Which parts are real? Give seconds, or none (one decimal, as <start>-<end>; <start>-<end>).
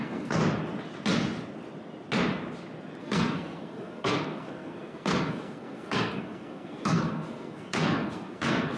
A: 0.4-3.0